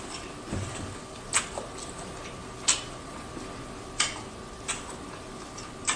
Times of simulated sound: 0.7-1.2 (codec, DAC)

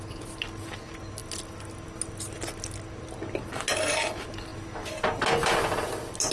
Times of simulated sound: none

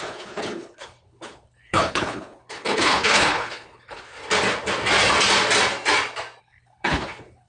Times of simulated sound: 0.0-4.2 (codec, HILCodec); 6.4-7.5